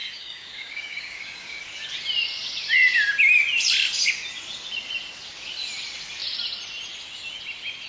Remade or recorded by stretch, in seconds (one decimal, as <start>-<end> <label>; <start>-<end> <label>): 0.0-1.6 remade; 1.6-7.9 recorded